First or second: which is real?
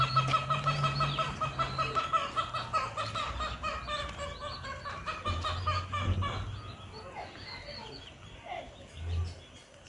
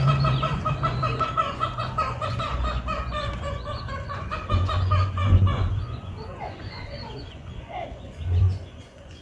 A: first